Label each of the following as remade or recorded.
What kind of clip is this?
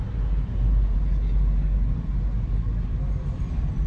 recorded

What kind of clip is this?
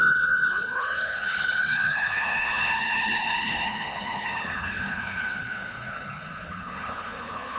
remade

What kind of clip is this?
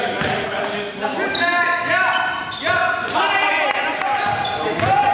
recorded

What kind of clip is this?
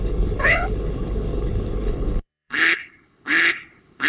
remade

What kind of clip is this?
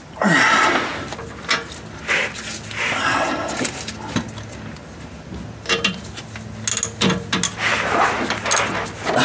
recorded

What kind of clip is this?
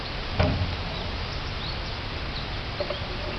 recorded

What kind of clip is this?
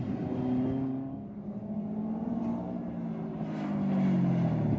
recorded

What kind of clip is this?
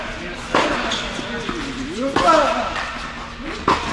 recorded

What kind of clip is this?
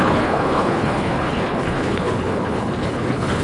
remade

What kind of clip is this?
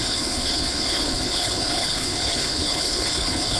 remade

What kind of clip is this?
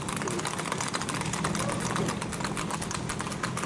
recorded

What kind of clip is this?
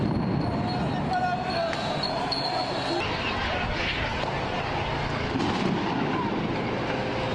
recorded